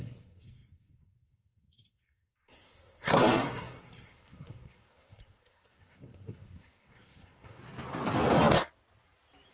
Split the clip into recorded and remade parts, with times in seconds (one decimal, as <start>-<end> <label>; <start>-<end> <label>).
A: 0.0-7.6 remade; 7.6-9.5 recorded